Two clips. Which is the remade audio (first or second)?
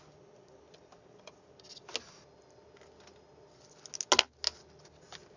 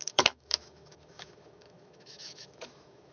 second